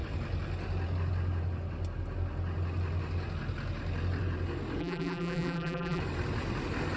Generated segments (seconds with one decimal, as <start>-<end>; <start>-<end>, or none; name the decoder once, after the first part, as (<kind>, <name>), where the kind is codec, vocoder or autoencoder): 4.8-6.0 (vocoder, BigVGAN v2)